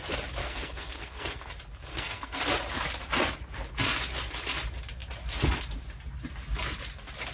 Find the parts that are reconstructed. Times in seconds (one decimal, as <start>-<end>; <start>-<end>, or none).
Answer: 0.4-1.5; 1.9-2.4